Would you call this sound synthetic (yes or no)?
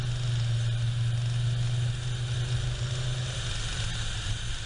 no